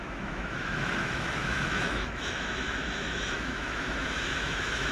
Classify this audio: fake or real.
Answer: fake